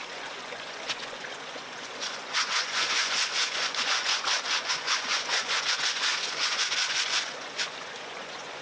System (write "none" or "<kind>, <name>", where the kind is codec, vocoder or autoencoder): vocoder, Vocos